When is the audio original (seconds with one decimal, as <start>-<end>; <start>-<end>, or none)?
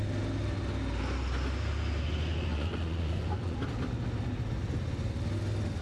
0.0-2.5; 3.6-5.8